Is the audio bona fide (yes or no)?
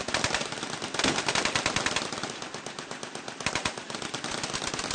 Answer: yes